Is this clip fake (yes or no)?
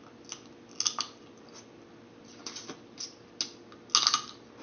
no